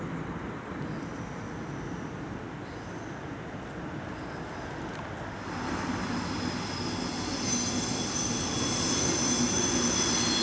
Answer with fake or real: real